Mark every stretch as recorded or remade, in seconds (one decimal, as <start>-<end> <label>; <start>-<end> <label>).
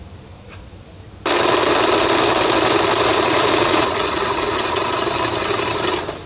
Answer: 0.0-3.1 recorded; 3.1-4.8 remade; 4.8-6.3 recorded